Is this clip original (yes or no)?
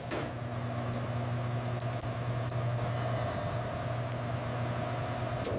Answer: yes